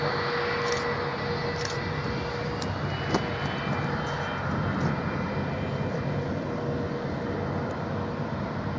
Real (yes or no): yes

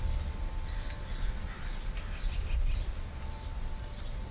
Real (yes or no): yes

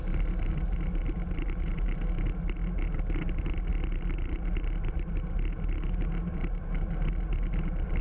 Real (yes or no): yes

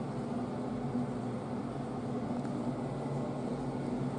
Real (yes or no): yes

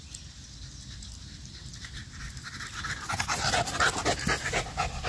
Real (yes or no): yes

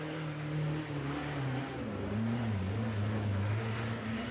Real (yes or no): yes